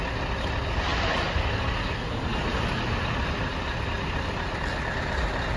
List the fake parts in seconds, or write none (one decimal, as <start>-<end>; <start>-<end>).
none